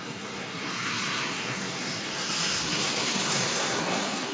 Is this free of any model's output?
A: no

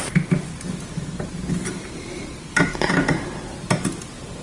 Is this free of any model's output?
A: yes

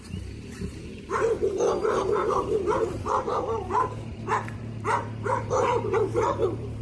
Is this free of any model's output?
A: no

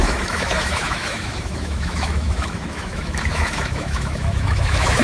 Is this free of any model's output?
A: no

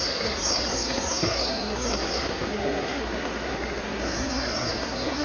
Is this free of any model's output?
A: no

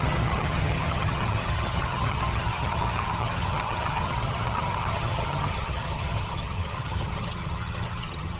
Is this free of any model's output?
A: no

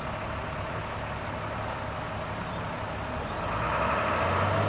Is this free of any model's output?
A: yes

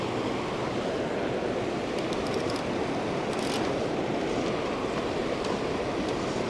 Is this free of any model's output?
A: yes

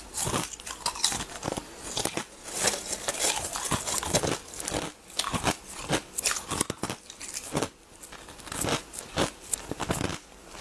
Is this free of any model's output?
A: yes